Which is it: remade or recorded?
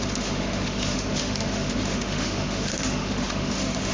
remade